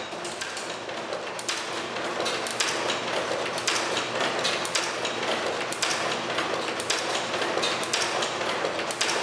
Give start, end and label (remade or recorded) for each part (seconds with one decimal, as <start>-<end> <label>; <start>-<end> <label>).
0.0-9.2 recorded